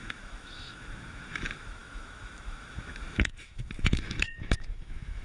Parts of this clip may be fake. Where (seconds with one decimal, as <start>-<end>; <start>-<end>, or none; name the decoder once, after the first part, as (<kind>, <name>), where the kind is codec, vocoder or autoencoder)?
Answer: 0.0-5.2 (autoencoder, DAC-VAE)